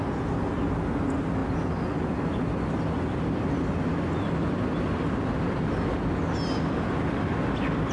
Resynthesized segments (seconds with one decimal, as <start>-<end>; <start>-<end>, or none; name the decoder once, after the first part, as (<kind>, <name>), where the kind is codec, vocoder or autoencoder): none